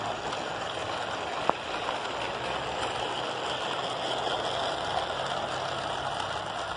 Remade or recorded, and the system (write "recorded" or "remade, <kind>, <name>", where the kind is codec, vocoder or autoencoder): recorded